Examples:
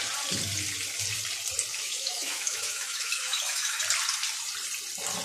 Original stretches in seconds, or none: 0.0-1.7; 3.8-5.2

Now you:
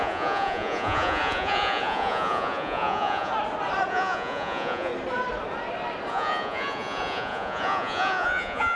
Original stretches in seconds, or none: 3.3-3.9; 4.9-6.1